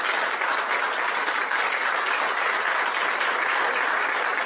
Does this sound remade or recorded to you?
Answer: recorded